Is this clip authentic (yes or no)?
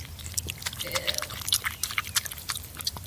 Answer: yes